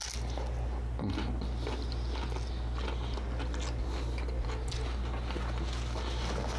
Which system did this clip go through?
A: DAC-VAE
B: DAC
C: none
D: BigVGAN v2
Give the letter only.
C